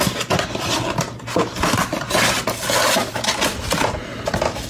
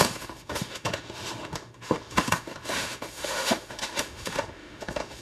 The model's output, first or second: second